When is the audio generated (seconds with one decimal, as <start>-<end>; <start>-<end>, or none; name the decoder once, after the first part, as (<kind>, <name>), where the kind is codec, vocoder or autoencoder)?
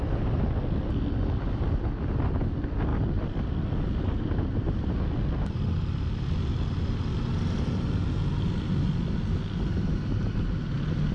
none